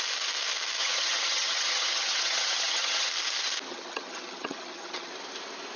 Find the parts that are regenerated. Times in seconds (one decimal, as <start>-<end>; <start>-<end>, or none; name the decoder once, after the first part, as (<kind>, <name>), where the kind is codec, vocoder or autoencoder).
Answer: 0.8-3.1 (vocoder, HiFi-GAN); 3.7-5.1